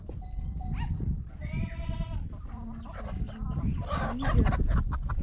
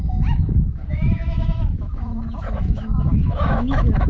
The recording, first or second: first